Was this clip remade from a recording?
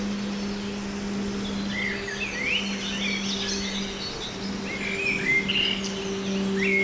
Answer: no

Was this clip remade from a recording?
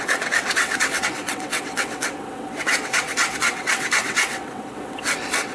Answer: yes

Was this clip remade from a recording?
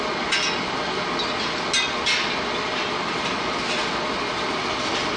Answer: no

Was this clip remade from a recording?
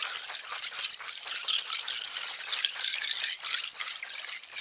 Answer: no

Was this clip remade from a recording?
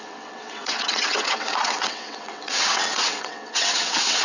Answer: yes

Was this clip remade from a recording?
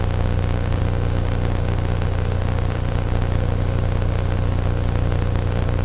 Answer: no